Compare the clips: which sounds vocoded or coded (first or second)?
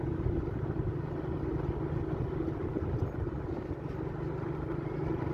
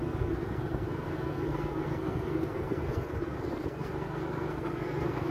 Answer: second